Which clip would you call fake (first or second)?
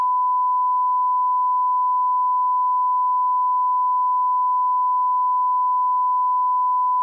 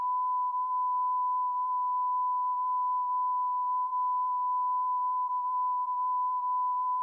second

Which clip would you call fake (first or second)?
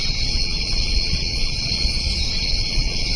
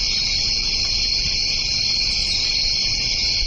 first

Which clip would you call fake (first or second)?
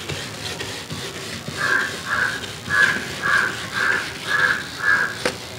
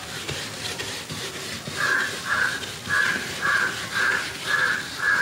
second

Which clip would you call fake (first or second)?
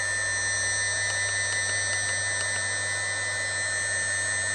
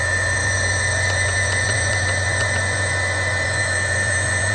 second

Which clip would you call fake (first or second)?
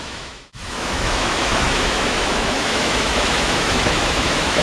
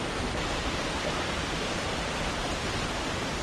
first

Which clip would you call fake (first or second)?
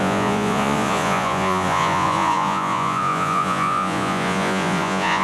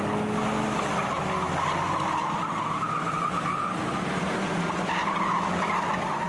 first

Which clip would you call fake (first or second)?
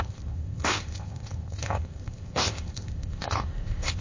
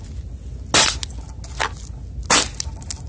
first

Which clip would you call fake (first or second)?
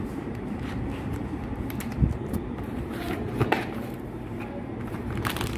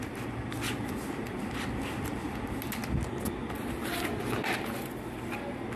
first